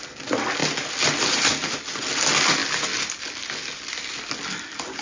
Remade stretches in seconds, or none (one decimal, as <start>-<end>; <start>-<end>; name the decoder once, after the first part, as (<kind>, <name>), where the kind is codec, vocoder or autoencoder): none